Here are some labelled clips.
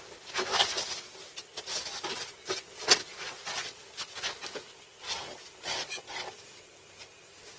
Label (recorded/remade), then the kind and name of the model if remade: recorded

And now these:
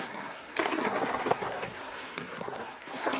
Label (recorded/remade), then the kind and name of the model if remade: remade, codec, SNAC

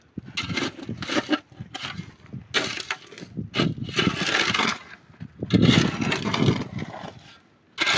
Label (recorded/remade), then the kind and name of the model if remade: recorded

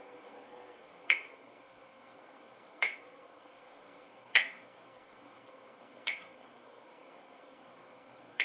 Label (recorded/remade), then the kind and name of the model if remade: remade, codec, SNAC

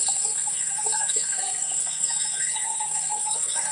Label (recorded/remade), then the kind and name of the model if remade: remade, codec, SNAC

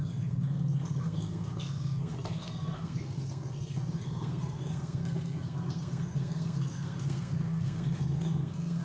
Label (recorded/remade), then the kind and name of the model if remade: remade, codec, SNAC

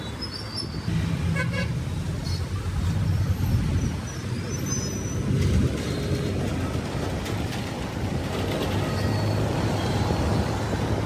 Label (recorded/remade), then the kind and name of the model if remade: recorded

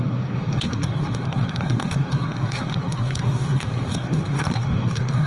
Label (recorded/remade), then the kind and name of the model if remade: remade, codec, SNAC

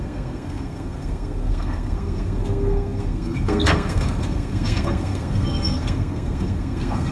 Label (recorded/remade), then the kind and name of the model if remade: remade, codec, SNAC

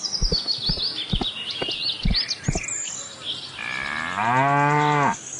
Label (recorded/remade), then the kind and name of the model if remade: recorded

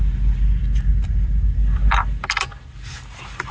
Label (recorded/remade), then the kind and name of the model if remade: recorded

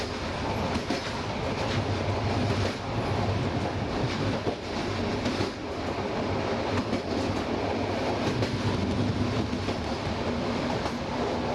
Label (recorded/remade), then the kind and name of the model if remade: recorded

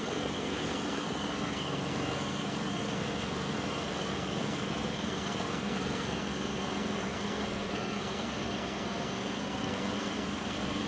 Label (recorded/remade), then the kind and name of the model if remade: remade, codec, SNAC